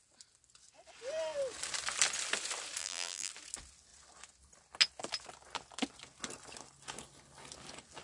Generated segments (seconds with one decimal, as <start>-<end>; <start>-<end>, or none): 2.8-3.3